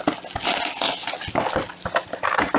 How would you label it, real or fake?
real